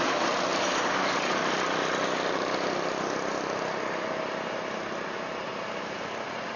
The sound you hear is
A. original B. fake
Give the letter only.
A